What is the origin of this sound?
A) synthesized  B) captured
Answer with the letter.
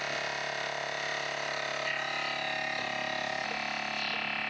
B